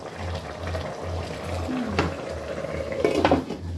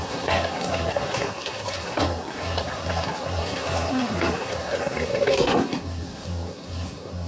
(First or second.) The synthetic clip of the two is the second